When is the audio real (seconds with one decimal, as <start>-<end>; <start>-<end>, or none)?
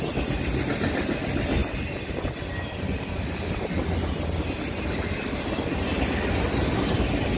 0.0-7.4